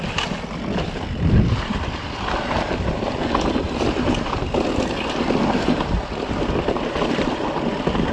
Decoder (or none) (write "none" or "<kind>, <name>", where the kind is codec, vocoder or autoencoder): vocoder, BigVGAN v2